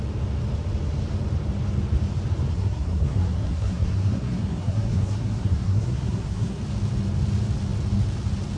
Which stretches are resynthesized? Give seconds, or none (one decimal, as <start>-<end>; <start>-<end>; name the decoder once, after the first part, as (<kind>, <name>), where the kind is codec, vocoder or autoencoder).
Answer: 2.5-6.6 (codec, SNAC)